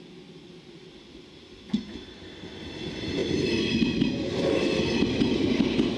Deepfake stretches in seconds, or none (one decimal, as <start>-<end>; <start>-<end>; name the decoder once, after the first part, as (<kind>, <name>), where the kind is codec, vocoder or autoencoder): none